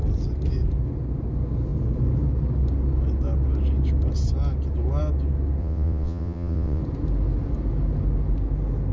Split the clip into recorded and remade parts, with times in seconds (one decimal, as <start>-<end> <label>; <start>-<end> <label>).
0.0-5.6 recorded; 5.6-6.8 remade; 6.8-8.9 recorded